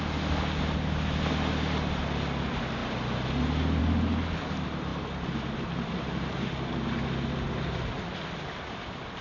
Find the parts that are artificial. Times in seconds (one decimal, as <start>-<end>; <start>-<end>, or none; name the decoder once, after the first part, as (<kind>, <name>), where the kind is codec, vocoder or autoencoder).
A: none